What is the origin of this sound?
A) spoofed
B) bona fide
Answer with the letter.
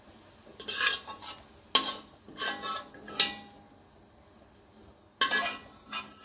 B